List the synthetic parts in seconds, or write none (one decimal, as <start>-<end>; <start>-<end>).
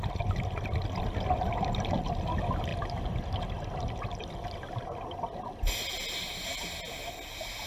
none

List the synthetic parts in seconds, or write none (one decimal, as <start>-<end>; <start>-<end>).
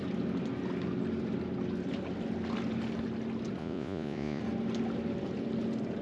3.6-4.4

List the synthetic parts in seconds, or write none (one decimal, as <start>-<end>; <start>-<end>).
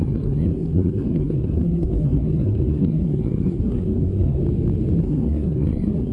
0.0-4.4; 5.0-6.1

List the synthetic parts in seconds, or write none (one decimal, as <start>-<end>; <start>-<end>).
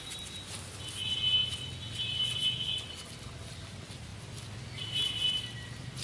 none